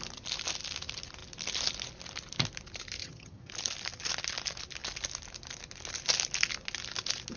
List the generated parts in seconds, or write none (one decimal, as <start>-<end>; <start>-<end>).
3.0-3.5